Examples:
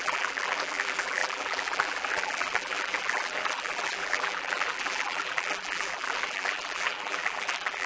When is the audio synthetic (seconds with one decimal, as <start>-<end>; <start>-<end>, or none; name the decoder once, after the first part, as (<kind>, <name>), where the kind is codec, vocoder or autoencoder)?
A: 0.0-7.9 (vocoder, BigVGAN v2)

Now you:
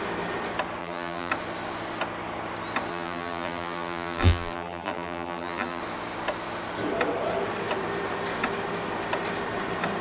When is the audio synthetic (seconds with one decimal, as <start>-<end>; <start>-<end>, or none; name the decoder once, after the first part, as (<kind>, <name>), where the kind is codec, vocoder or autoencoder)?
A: 0.8-1.3 (vocoder, BigVGAN v2); 2.9-5.8

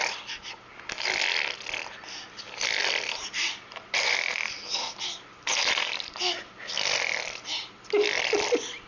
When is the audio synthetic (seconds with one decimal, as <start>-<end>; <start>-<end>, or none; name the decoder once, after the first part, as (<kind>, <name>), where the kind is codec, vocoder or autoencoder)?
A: 3.2-6.2 (vocoder, BigVGAN v2)